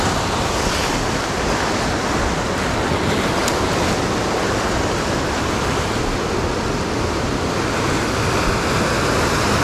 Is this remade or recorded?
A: recorded